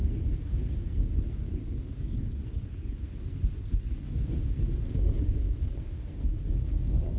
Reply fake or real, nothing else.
fake